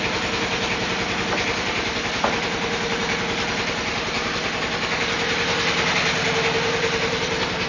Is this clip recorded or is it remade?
recorded